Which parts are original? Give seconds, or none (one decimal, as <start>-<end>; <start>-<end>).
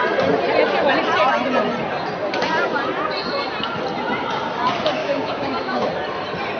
0.0-5.0; 5.9-6.6